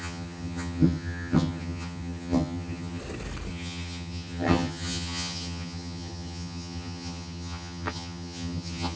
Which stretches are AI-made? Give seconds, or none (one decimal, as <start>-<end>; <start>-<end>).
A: 0.0-3.0; 3.5-9.0